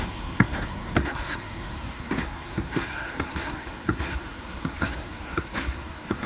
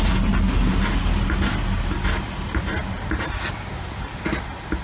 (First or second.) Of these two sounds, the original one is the second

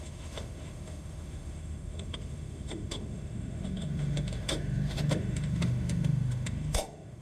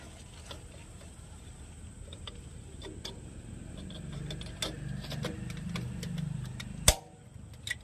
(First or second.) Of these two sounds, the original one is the second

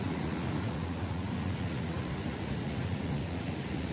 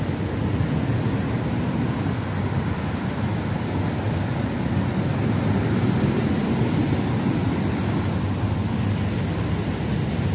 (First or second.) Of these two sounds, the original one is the second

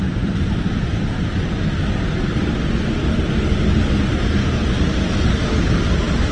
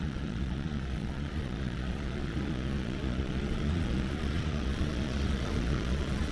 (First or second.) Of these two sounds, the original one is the first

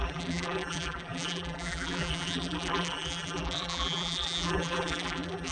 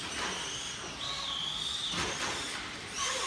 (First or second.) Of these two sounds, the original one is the second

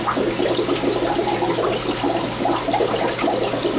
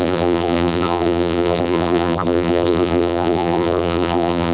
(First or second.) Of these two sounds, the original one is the first